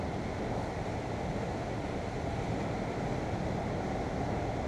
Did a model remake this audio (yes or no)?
no